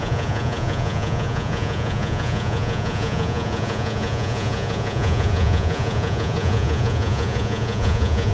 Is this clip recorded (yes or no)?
no